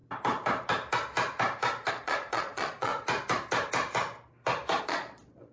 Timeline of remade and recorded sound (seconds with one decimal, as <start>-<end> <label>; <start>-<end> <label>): 0.0-1.9 recorded; 1.9-2.9 remade; 2.9-4.8 recorded; 4.8-5.5 remade